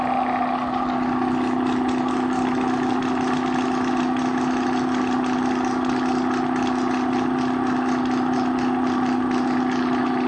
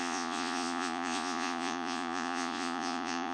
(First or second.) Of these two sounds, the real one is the first